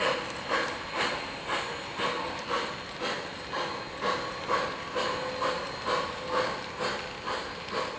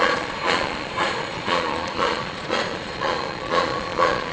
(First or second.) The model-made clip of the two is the second